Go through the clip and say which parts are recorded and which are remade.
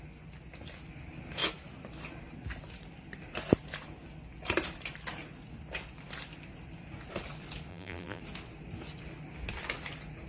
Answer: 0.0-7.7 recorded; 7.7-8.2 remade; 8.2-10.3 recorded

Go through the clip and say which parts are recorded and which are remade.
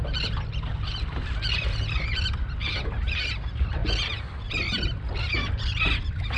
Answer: 0.0-6.4 recorded